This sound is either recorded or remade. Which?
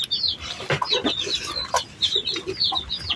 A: recorded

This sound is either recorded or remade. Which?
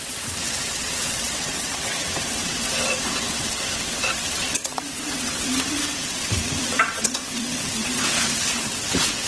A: remade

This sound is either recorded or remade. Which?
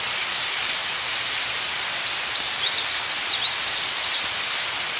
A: recorded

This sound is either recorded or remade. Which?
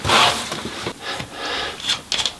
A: recorded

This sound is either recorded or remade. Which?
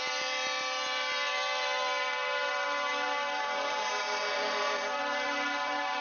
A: remade